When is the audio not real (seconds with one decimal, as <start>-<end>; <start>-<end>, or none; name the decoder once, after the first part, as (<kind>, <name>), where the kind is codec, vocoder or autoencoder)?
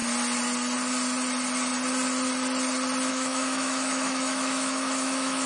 3.1-5.5 (autoencoder, DAC-VAE)